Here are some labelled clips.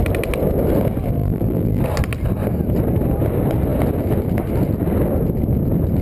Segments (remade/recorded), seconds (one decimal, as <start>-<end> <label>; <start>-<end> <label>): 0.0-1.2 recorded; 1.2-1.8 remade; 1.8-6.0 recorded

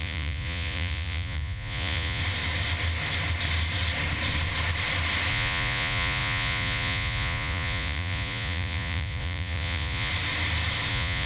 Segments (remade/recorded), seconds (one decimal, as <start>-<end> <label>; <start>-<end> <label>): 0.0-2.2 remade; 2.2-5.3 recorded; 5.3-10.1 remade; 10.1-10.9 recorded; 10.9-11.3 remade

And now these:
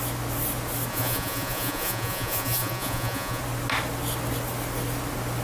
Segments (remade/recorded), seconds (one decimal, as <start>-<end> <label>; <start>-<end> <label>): 0.0-0.9 recorded; 0.9-3.4 remade; 3.4-5.4 recorded

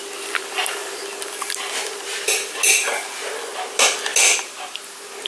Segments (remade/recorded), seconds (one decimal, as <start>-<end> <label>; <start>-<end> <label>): 0.0-5.3 recorded

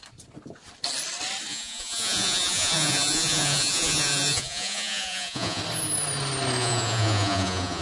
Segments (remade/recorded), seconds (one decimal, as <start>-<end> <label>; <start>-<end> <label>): 0.0-1.5 recorded; 1.5-5.6 remade; 5.6-6.6 recorded; 6.6-7.8 remade